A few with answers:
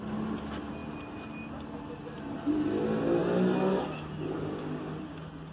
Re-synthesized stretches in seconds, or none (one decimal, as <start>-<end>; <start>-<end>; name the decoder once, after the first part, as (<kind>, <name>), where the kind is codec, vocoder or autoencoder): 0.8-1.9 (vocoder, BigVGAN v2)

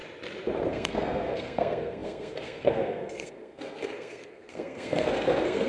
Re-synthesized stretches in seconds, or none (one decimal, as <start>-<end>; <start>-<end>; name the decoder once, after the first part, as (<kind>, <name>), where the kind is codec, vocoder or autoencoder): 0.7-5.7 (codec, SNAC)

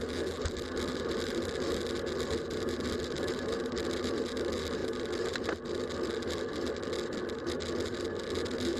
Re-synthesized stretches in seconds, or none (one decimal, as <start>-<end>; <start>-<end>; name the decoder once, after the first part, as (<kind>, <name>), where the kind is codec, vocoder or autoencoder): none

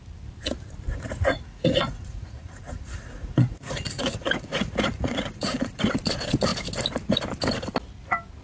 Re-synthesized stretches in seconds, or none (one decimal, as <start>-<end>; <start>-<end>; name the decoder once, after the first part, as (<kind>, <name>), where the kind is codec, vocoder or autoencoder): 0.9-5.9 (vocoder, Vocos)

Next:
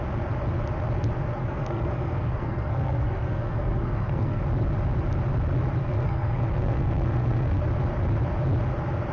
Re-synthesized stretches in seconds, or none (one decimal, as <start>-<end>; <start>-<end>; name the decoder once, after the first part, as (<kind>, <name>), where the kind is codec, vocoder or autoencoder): 1.4-4.4 (codec, SNAC); 5.8-7.6